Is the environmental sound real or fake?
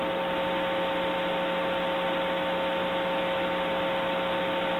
real